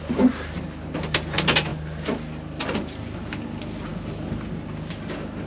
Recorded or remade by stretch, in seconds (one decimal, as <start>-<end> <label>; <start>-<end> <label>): 0.0-5.5 recorded